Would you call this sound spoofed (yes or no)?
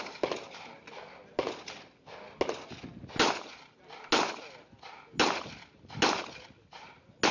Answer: no